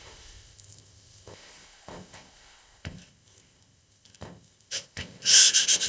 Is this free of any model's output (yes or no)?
no